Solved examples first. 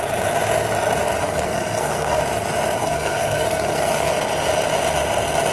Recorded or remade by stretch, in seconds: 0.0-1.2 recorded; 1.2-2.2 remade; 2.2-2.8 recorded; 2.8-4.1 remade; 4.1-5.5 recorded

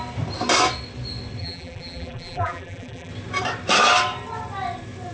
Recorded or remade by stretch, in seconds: 0.0-1.4 recorded; 1.4-3.1 remade; 3.1-5.1 recorded

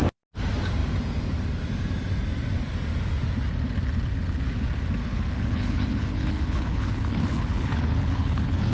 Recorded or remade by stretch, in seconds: 0.0-5.0 recorded; 5.0-8.7 remade

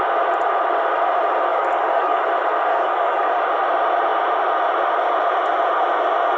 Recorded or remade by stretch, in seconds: 0.0-1.5 recorded; 1.5-2.2 remade; 2.2-2.7 recorded; 2.7-3.3 remade; 3.3-6.4 recorded

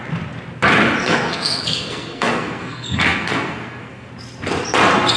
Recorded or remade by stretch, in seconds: 0.0-1.0 recorded; 1.0-4.1 remade; 4.1-5.2 recorded

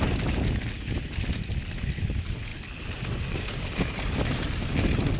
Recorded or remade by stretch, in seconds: 0.0-5.2 recorded